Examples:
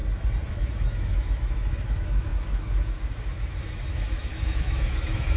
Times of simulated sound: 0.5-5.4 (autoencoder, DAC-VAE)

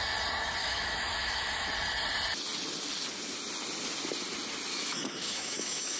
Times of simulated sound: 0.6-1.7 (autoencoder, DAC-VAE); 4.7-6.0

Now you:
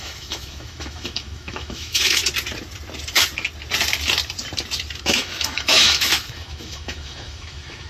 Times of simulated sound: 0.0-2.2 (autoencoder, DAC-VAE); 5.0-7.9

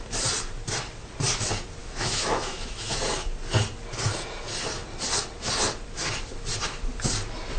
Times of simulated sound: 1.8-3.0 (autoencoder, DAC-VAE)